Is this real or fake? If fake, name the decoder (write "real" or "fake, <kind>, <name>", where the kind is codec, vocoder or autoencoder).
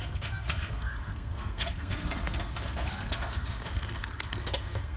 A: fake, codec, SNAC